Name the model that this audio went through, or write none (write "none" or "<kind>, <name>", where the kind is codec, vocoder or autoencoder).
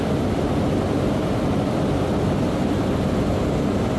none